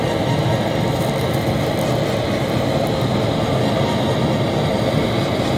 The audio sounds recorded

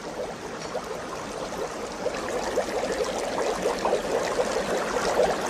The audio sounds recorded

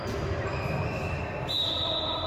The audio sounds recorded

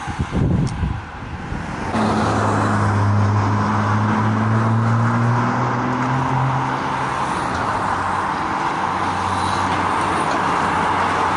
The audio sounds recorded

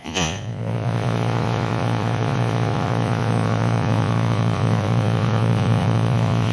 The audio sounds remade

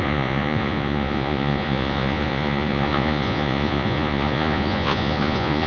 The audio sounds remade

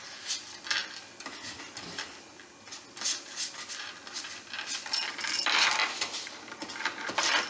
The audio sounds recorded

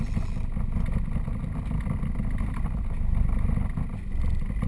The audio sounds recorded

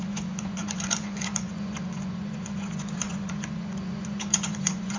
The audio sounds remade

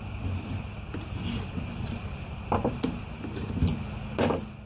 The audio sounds recorded